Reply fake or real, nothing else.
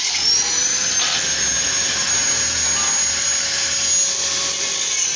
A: real